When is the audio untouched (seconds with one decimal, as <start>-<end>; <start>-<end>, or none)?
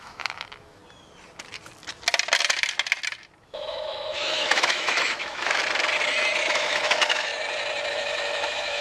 0.8-3.4; 5.6-6.5; 7.3-7.9